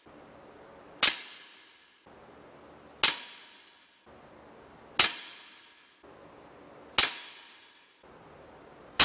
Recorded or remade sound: recorded